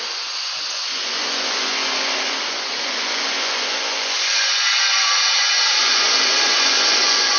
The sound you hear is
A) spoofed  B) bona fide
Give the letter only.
A